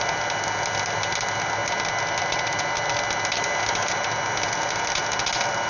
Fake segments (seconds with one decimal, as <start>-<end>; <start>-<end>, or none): none

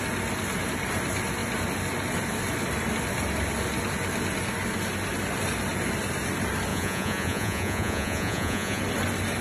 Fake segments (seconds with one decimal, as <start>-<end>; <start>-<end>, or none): 6.7-8.8

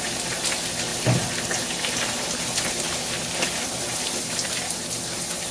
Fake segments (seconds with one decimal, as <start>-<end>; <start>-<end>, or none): none

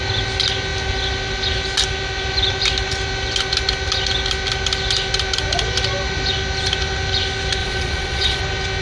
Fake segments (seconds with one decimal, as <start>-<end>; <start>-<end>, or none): 7.6-8.4

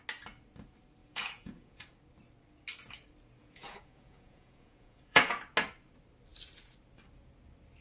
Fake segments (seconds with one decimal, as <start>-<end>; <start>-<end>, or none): 1.0-2.0; 3.4-5.4